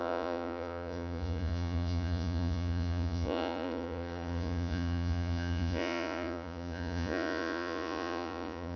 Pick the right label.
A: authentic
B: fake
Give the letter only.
B